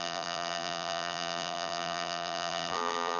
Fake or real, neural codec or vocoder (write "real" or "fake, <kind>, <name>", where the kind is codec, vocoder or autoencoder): fake, vocoder, BigVGAN v2